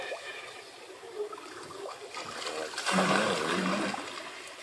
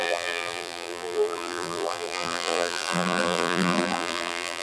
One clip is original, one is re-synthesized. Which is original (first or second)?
first